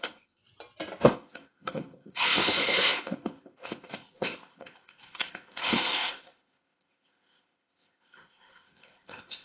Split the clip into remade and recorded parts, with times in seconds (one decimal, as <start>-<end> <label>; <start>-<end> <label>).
0.0-0.4 remade; 0.4-1.0 recorded; 1.0-9.4 remade